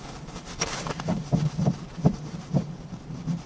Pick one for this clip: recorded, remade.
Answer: remade